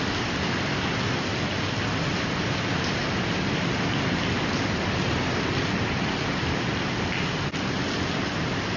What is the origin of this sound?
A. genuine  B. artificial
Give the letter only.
A